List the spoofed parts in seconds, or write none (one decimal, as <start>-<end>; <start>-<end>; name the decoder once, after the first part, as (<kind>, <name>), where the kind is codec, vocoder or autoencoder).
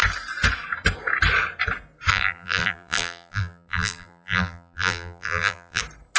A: 2.1-5.8 (vocoder, BigVGAN v2)